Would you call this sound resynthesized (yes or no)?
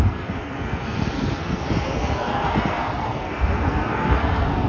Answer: yes